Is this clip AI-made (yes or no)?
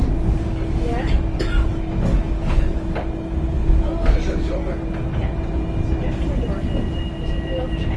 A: no